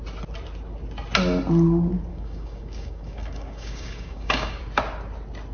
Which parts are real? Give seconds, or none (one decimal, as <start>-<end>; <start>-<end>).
0.0-2.1; 4.6-5.5